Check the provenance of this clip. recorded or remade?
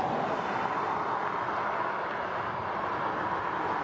recorded